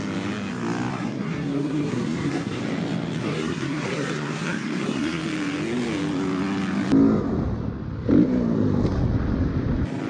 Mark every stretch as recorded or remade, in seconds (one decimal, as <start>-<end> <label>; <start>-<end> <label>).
0.0-0.9 recorded; 0.9-2.6 remade; 2.6-3.2 recorded; 3.2-5.2 remade; 5.2-10.1 recorded